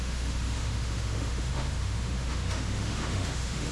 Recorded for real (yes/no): no